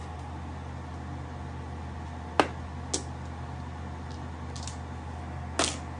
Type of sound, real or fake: real